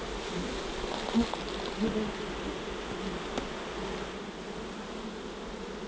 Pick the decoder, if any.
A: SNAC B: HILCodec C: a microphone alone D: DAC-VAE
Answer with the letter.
C